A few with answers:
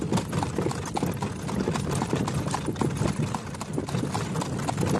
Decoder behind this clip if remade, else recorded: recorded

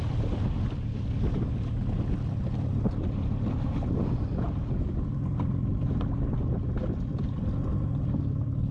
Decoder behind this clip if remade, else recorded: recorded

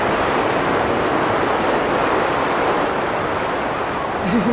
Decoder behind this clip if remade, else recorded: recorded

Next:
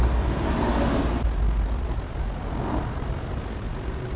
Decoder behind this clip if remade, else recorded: recorded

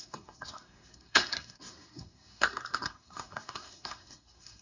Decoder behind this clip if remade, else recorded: remade, codec, SNAC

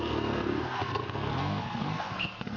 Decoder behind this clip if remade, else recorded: remade, codec, SNAC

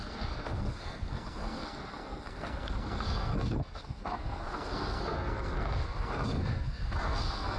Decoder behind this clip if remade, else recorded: remade, codec, SNAC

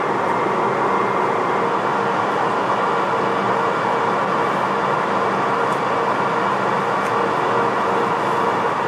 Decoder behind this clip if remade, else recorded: recorded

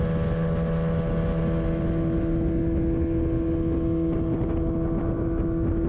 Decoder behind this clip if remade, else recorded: recorded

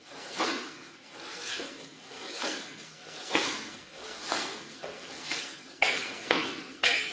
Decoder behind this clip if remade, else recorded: remade, codec, SNAC